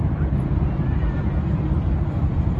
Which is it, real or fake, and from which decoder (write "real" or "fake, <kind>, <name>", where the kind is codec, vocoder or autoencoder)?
fake, vocoder, BigVGAN v2